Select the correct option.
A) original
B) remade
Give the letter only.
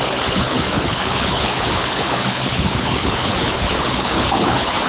B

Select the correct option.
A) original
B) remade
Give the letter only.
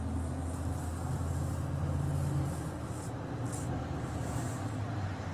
A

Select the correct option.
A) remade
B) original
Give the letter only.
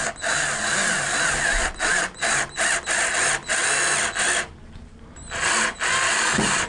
B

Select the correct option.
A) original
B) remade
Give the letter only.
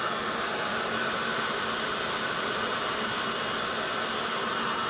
A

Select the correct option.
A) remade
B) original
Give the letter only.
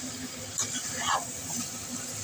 B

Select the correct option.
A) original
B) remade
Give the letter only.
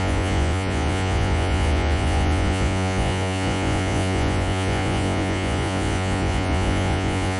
B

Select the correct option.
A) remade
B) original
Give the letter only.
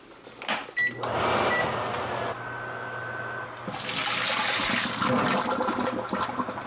B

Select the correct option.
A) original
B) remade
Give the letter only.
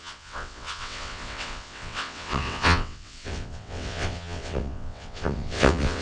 B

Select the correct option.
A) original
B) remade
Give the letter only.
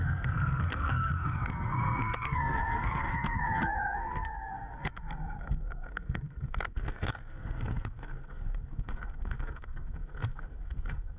B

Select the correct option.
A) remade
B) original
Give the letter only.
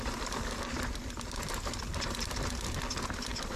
B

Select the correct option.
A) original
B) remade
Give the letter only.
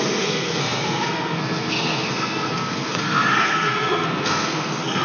B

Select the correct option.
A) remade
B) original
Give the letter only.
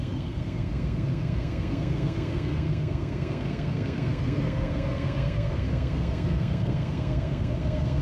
A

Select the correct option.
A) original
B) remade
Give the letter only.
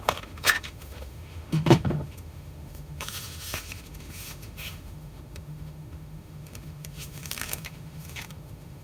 B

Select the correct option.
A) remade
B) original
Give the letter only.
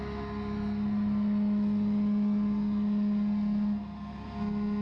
B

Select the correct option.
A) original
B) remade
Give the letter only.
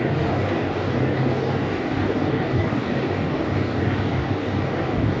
B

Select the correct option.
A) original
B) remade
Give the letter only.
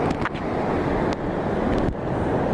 A